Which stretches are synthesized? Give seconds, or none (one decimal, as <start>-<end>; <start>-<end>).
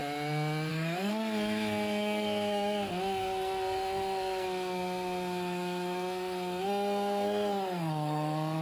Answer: 0.7-8.6